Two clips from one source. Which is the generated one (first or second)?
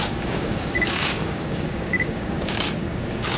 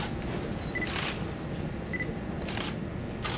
first